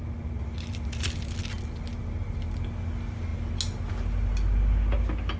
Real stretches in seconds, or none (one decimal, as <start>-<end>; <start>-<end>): 0.0-5.4